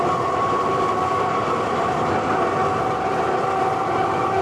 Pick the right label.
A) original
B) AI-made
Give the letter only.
A